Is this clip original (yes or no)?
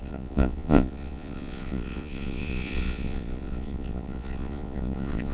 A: no